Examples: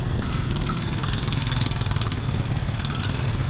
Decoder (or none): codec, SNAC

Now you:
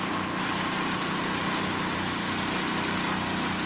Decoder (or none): none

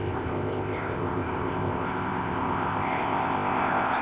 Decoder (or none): codec, ZipCodec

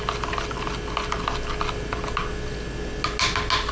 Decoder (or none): none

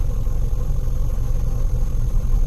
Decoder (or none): none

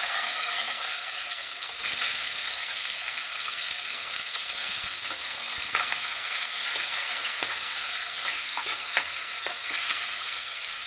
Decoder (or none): codec, SNAC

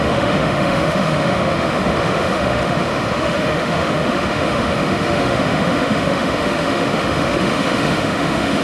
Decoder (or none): autoencoder, DAC-VAE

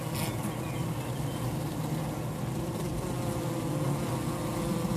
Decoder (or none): none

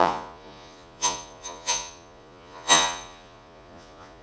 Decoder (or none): vocoder, Vocos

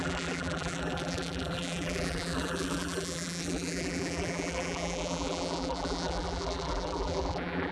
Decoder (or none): vocoder, BigVGAN v2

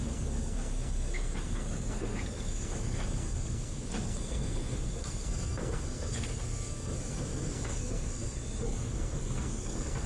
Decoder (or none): codec, SNAC